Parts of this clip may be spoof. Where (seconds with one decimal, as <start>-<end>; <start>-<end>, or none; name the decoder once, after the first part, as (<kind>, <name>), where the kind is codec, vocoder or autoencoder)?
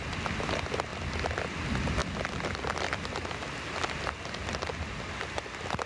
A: none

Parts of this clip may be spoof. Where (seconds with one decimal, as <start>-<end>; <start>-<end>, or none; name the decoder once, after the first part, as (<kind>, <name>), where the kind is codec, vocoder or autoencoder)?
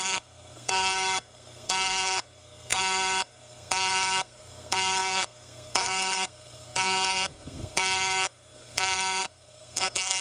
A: 0.0-10.2 (codec, SNAC)